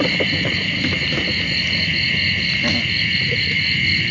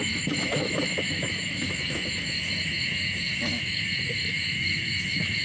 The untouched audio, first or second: first